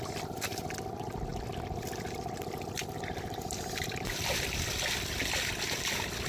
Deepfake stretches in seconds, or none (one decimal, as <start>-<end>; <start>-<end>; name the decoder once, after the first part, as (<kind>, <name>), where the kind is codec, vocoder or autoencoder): none